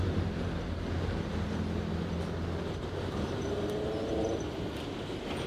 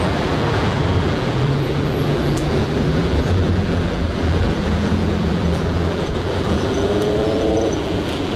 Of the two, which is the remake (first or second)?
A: second